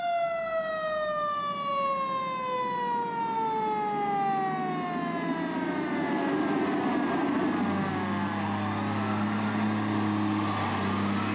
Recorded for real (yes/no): yes